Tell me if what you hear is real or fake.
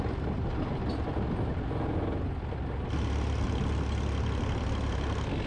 real